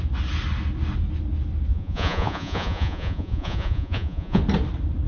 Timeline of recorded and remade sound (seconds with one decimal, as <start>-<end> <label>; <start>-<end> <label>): 0.0-1.7 recorded; 1.7-4.4 remade; 4.4-5.1 recorded